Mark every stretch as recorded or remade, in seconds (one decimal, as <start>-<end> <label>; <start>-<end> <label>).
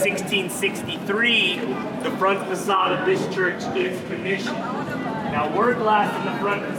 0.0-2.4 recorded; 2.4-4.5 remade; 4.5-6.8 recorded